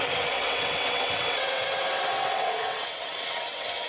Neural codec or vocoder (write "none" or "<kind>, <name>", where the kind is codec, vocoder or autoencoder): vocoder, WaveNeXt